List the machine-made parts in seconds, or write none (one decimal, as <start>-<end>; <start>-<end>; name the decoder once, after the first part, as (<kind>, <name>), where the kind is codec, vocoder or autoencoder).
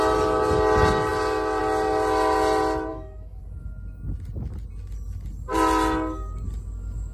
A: 2.9-3.4 (autoencoder, DAC-VAE)